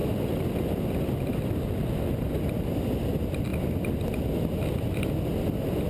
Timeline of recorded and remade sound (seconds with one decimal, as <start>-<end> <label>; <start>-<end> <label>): 0.0-5.9 recorded